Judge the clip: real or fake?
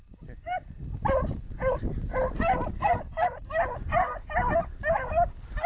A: real